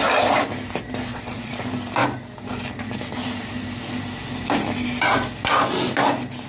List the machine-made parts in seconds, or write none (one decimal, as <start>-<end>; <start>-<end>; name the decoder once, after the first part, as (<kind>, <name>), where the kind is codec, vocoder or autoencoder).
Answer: 1.1-1.6 (vocoder, Vocos)